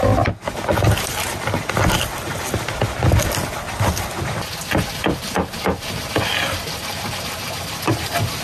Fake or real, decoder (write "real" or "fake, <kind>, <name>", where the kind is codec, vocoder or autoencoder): real